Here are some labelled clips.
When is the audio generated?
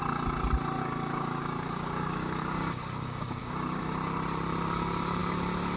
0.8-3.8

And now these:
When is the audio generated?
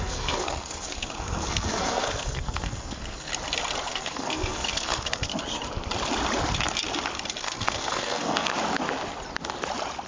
0.0-3.3; 3.9-5.3; 7.4-8.5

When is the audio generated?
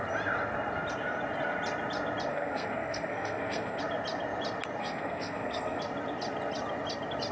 2.3-3.8; 4.8-5.8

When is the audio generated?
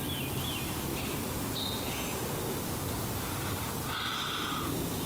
none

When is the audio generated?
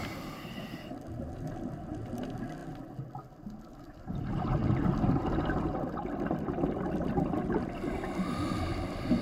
none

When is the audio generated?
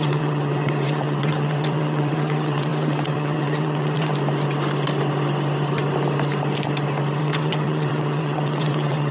0.0-4.1; 7.2-9.1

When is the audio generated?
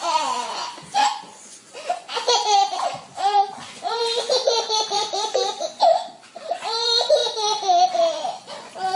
0.0-9.0